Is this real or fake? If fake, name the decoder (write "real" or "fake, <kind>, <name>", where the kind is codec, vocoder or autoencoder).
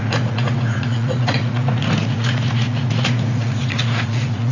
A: fake, vocoder, Vocos